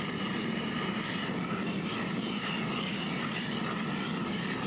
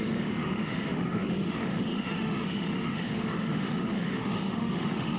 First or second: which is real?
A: first